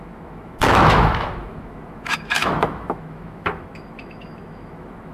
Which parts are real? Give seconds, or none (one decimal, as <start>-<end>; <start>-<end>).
none